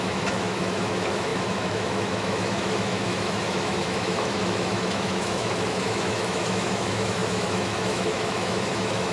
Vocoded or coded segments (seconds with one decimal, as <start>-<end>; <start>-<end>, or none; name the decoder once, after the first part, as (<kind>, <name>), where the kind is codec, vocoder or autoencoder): 0.0-9.1 (autoencoder, DAC-VAE)